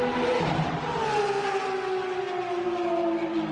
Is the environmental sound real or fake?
real